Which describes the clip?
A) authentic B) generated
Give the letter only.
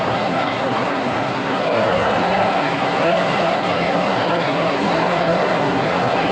B